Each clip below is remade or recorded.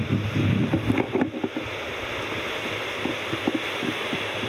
recorded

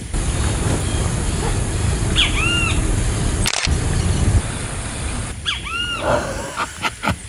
recorded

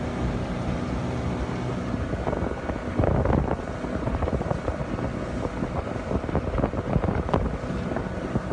recorded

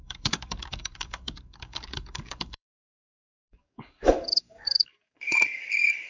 remade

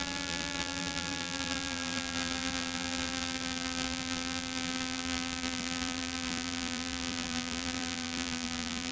remade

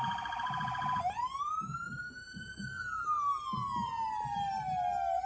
remade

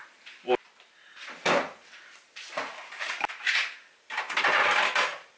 recorded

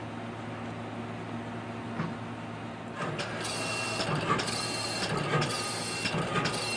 recorded